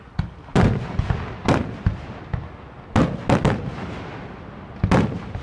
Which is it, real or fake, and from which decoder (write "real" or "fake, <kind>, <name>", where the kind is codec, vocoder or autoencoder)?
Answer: real